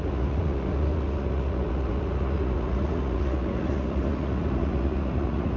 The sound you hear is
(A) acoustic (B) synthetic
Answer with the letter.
B